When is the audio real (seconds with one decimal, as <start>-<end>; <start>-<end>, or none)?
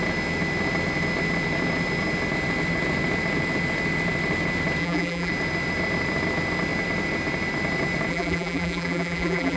0.0-4.8; 5.3-8.1